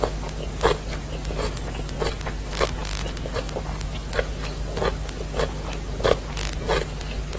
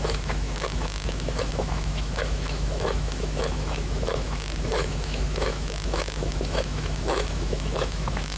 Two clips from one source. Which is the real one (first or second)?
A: first